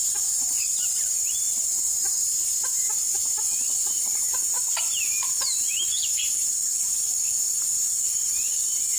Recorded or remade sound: remade